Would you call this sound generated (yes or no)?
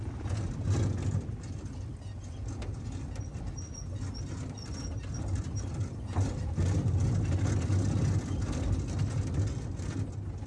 no